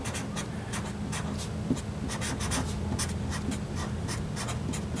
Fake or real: real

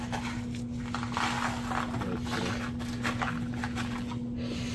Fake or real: real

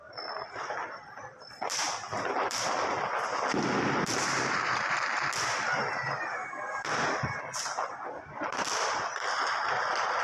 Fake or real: fake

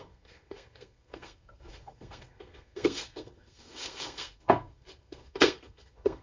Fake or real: fake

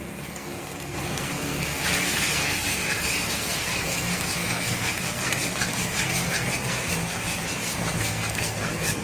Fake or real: fake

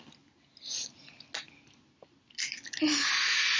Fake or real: real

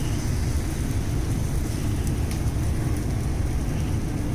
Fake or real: real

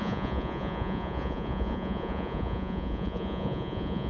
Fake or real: fake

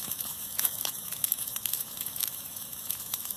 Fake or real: fake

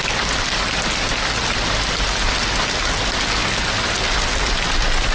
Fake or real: real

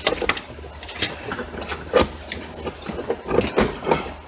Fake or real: real